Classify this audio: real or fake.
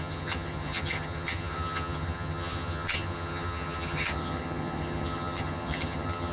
fake